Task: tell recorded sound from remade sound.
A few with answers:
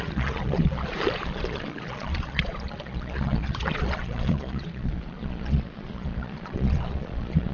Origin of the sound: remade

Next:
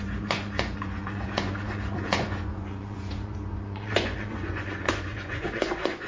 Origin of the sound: remade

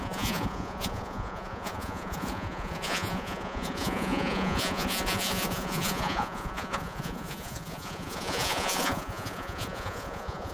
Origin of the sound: remade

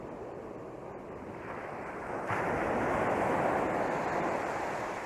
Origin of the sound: recorded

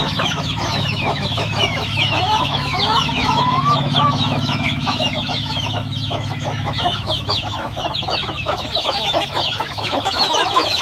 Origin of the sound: remade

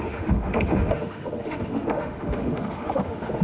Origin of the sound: remade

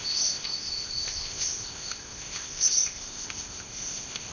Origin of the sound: remade